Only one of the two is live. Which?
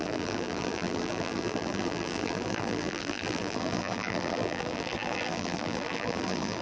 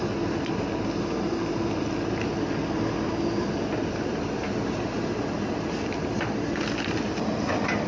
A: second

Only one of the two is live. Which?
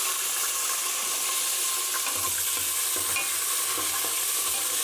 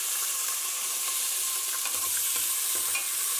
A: first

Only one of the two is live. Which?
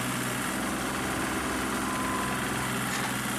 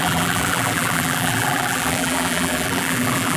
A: first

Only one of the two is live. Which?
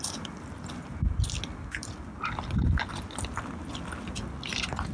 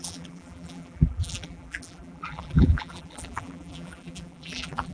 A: first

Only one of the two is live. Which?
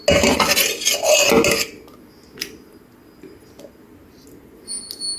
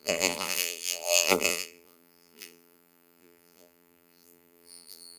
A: first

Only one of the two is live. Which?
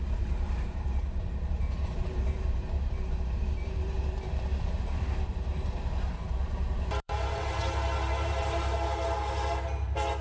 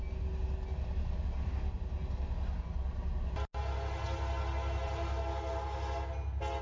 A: second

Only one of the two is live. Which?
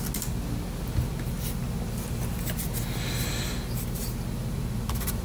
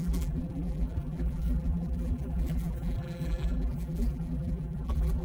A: first